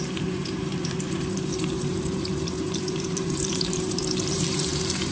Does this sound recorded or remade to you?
remade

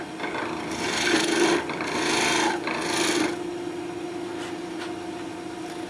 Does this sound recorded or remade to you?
recorded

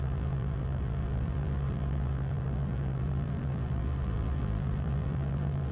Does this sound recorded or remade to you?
remade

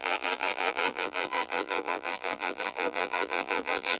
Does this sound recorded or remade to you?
remade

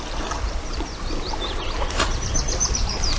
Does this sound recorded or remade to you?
remade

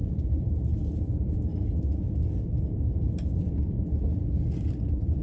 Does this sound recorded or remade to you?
remade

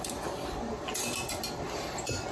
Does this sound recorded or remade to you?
recorded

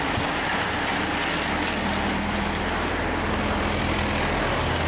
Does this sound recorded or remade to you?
recorded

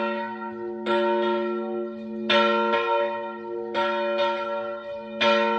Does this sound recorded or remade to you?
recorded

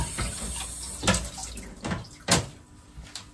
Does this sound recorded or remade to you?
recorded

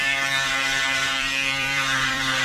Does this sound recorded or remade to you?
remade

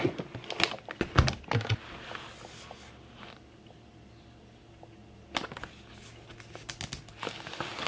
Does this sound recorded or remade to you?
recorded